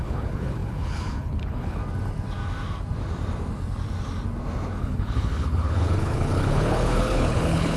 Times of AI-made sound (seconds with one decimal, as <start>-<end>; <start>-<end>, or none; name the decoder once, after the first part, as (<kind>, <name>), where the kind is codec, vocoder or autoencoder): 0.0-1.8 (codec, HILCodec); 4.8-7.8